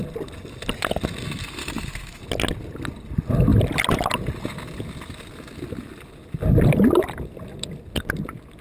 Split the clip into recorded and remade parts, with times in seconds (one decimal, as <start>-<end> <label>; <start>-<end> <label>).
0.0-1.6 recorded; 1.6-2.2 remade; 2.2-8.6 recorded